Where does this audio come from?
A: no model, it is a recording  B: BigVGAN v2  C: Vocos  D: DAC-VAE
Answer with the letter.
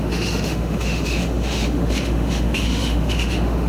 D